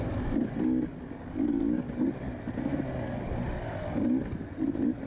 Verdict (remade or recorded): recorded